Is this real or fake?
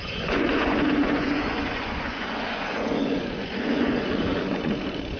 fake